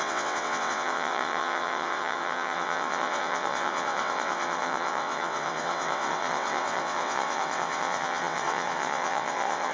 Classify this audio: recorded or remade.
remade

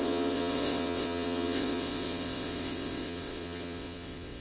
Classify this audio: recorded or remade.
remade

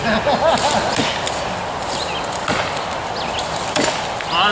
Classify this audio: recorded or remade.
recorded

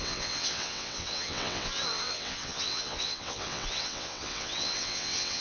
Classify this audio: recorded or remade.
remade